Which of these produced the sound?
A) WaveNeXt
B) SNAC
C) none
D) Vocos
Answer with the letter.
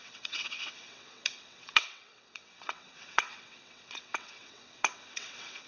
A